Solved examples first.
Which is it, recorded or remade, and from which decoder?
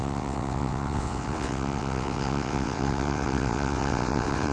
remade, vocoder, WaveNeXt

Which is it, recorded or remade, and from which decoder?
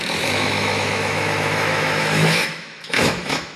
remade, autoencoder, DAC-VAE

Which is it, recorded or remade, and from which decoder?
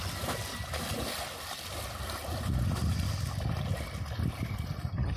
recorded